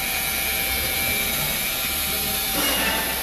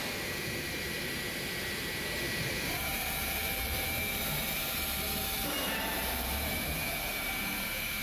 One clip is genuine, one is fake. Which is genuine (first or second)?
first